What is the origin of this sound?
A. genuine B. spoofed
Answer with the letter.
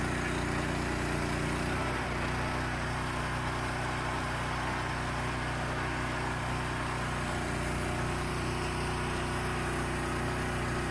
A